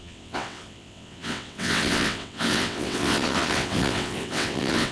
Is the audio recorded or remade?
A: remade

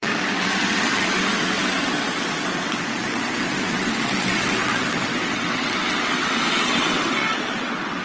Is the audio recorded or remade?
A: remade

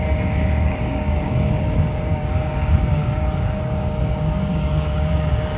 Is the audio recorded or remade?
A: remade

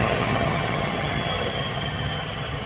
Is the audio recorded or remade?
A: remade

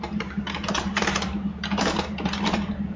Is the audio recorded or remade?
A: remade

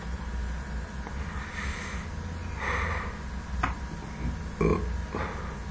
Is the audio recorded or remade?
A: recorded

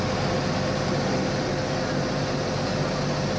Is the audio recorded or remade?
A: recorded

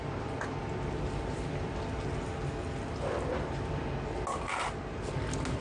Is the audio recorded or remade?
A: recorded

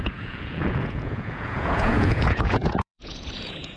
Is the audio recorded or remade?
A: remade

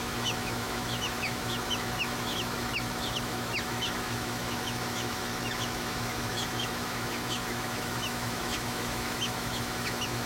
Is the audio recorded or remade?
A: remade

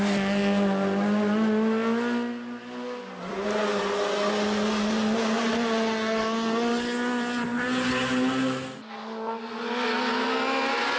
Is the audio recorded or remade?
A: recorded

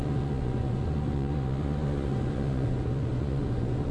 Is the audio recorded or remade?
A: remade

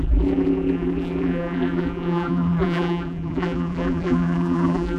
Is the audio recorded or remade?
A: remade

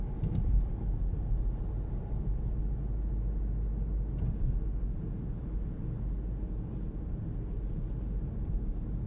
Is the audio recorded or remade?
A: recorded